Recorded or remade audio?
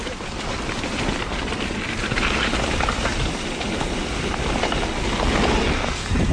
recorded